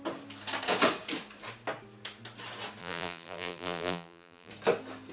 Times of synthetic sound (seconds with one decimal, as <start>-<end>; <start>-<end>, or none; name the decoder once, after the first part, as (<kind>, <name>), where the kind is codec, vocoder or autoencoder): 2.8-4.5 (vocoder, BigVGAN v2)